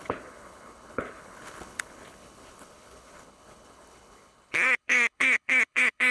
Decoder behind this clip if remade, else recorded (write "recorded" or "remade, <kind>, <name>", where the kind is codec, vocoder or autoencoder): remade, codec, HILCodec